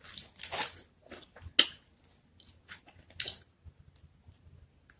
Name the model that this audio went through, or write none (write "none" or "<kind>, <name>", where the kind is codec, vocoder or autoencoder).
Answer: none